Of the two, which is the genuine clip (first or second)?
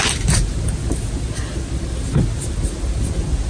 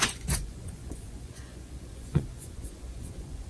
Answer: first